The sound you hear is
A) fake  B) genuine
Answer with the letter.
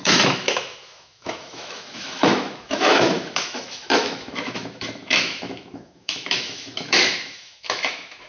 A